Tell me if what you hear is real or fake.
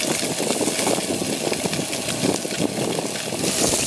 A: real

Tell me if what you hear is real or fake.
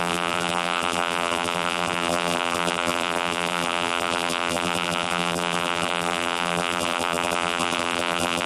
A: fake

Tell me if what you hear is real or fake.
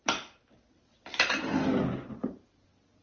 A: real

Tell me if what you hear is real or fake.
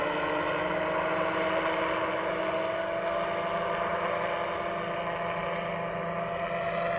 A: real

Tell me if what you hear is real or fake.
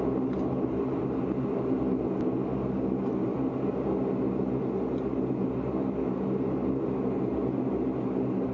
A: real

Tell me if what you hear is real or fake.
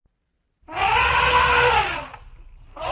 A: real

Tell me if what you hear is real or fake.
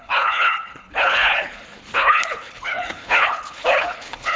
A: fake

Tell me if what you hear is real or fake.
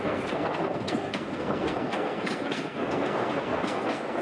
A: fake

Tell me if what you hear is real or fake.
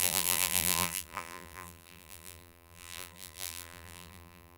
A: fake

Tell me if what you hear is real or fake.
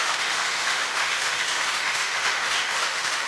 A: fake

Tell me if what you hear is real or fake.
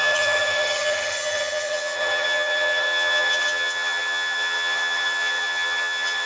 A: fake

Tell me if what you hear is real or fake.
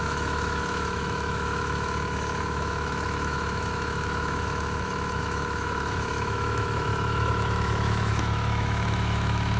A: fake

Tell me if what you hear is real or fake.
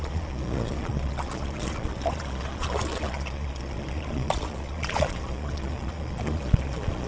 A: fake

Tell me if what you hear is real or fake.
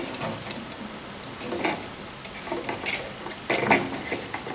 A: real